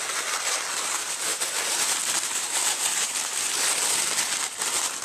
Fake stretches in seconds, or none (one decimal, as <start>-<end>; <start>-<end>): 1.3-3.8